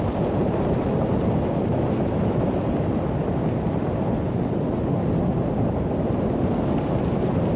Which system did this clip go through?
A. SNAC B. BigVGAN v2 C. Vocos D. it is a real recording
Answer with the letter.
D